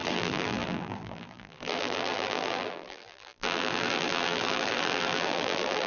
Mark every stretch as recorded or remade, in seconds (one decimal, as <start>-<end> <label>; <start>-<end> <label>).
0.0-5.9 remade